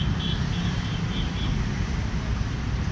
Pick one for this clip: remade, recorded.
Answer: recorded